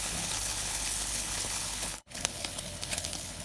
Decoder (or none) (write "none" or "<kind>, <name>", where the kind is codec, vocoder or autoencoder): codec, HILCodec